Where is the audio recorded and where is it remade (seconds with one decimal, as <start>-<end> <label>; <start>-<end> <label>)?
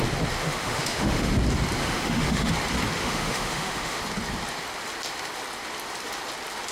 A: 0.0-0.4 recorded; 0.4-1.3 remade; 1.3-1.8 recorded; 1.8-2.5 remade; 2.5-3.0 recorded; 3.0-4.0 remade; 4.0-6.7 recorded